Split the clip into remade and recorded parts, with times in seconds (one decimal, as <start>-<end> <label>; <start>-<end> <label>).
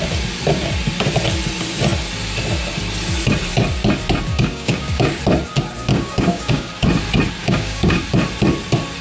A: 0.0-4.3 recorded; 4.3-5.2 remade; 5.2-5.9 recorded; 5.9-6.7 remade; 6.7-7.4 recorded; 7.4-8.0 remade; 8.0-9.0 recorded